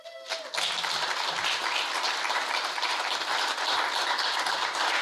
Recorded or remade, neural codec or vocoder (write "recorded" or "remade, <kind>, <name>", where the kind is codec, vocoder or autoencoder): recorded